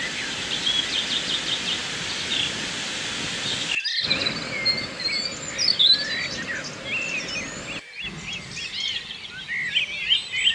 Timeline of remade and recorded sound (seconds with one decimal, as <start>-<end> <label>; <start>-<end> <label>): 0.0-10.5 recorded